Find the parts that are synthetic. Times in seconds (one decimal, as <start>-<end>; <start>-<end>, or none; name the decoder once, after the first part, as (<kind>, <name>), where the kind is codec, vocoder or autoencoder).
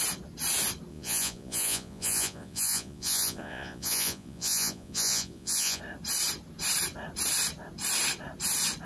0.9-5.8 (vocoder, Vocos)